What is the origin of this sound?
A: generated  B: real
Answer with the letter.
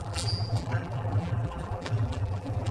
A